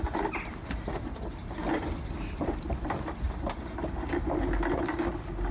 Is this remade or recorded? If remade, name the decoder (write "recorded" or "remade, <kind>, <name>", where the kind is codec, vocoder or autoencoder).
recorded